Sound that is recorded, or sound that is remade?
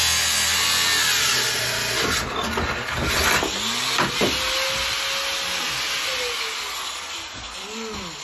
recorded